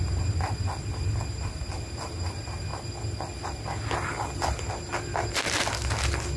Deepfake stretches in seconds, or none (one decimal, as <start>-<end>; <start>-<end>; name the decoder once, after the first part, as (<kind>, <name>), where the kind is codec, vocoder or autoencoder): none